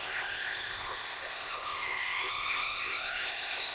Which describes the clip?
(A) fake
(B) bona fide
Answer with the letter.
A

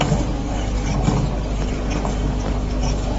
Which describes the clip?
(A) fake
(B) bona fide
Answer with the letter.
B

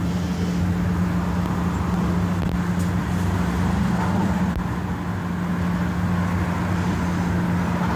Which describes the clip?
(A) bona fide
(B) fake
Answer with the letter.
A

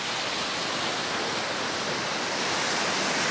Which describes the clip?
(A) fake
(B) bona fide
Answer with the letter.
B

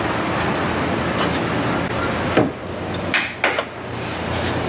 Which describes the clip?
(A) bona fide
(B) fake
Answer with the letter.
A